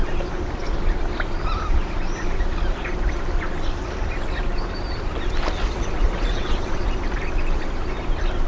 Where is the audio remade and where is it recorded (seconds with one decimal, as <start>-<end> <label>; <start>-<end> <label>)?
0.0-5.6 recorded; 5.6-6.9 remade; 6.9-8.5 recorded